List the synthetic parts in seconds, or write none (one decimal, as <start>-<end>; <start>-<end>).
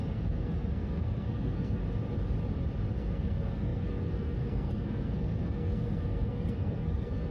0.0-1.8; 2.9-7.3